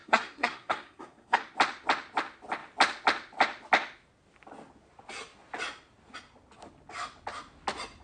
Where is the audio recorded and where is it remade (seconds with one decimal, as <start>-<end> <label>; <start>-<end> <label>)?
0.0-1.4 remade; 1.4-8.0 recorded